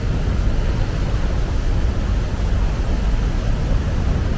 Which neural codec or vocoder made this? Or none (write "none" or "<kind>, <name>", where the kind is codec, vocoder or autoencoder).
none